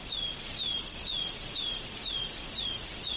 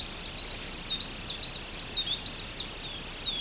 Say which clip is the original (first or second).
second